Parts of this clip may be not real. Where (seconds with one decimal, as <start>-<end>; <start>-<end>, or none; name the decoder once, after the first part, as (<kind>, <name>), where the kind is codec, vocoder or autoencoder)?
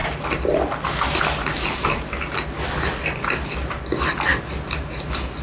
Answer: none